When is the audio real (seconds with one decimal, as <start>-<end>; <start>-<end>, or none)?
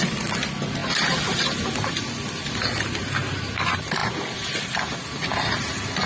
0.0-6.1